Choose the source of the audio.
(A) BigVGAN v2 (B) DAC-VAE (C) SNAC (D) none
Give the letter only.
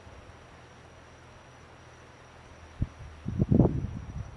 D